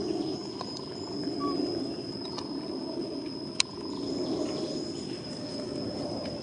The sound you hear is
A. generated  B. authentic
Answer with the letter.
B